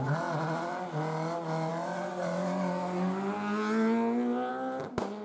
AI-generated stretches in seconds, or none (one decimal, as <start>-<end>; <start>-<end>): none